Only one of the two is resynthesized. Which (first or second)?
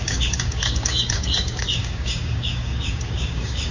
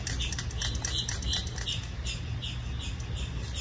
first